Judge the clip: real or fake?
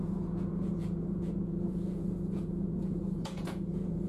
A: fake